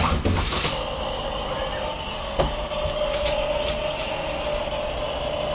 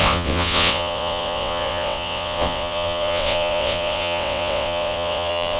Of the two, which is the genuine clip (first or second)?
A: first